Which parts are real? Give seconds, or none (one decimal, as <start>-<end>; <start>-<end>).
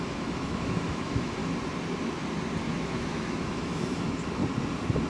1.4-2.7; 4.4-5.1